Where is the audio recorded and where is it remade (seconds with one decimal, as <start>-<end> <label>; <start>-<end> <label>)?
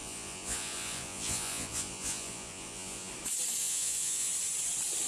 0.0-3.1 remade; 3.1-3.6 recorded; 3.6-4.3 remade; 4.3-5.1 recorded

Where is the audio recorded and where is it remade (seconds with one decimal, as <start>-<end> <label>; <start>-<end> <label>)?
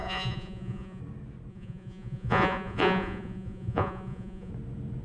0.0-1.0 remade; 1.0-1.5 recorded; 1.5-4.5 remade; 4.5-5.0 recorded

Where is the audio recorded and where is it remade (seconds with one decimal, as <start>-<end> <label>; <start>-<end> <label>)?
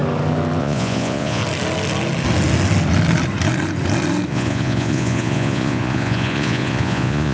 0.0-0.6 recorded; 0.6-1.4 remade; 1.4-4.3 recorded; 4.3-7.3 remade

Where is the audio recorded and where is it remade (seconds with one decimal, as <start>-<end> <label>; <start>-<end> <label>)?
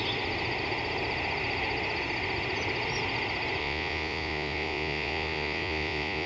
0.0-3.6 recorded; 3.6-6.3 remade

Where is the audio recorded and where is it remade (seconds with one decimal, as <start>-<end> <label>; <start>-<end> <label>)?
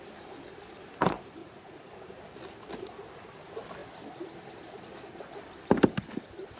0.0-1.4 recorded; 1.4-2.2 remade; 2.2-6.6 recorded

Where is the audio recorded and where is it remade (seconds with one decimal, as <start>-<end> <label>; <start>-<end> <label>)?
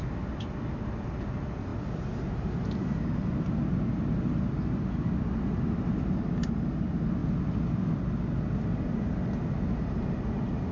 0.0-10.7 recorded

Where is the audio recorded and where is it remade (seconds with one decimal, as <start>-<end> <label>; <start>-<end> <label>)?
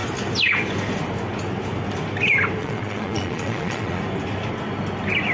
0.0-2.6 recorded; 2.6-4.0 remade; 4.0-5.3 recorded